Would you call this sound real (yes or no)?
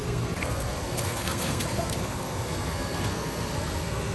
no